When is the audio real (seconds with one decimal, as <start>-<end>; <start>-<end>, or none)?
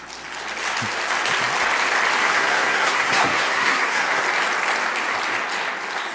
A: 0.0-2.2; 4.2-6.1